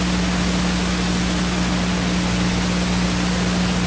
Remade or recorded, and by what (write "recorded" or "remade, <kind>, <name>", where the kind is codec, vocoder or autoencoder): recorded